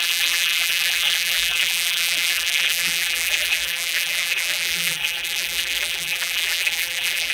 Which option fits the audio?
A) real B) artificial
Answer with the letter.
B